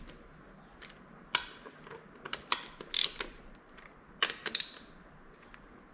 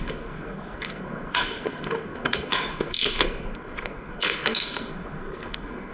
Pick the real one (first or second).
first